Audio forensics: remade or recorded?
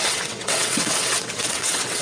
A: remade